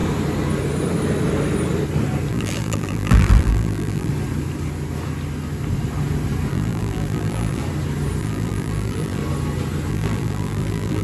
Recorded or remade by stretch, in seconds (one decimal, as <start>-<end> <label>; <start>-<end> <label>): 0.0-2.3 recorded; 2.3-4.1 remade; 4.1-6.5 recorded; 6.5-7.6 remade; 7.6-8.2 recorded; 8.2-9.2 remade; 9.2-9.9 recorded; 9.9-11.0 remade